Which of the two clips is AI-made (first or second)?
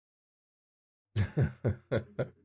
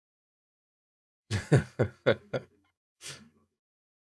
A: second